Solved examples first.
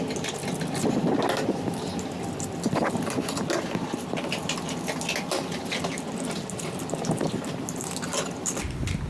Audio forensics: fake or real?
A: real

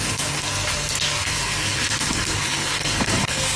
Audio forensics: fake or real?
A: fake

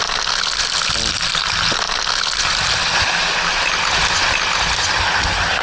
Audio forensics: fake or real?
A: real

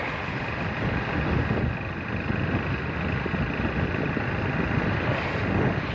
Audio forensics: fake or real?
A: real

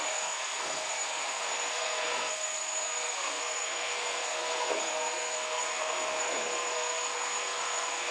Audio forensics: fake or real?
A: fake